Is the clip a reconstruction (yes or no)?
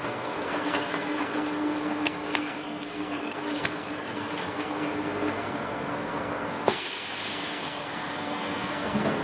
yes